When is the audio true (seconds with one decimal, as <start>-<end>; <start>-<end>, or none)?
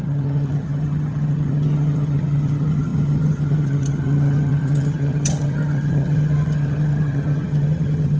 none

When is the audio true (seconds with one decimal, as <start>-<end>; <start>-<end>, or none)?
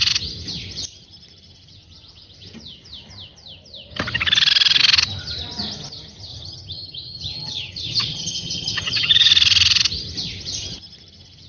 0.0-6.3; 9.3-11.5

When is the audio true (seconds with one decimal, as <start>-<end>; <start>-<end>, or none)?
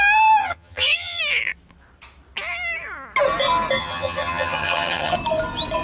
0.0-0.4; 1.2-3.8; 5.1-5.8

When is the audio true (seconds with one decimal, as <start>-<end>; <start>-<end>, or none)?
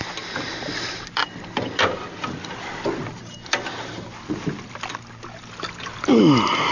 0.0-6.7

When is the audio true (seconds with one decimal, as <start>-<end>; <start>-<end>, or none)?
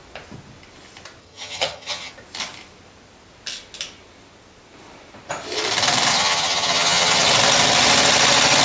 0.0-1.2; 2.1-6.1; 7.3-8.6